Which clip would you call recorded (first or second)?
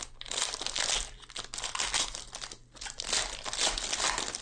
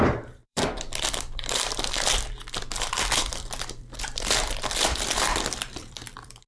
first